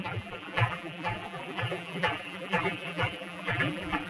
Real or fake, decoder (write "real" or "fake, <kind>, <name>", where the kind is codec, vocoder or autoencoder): fake, vocoder, BigVGAN v2